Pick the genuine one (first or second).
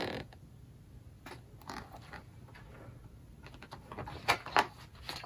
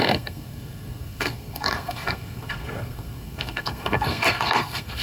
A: first